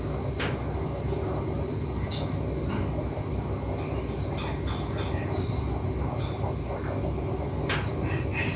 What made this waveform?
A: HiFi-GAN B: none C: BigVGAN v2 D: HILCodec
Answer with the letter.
B